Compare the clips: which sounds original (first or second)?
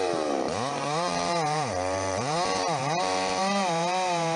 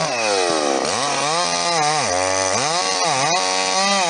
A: second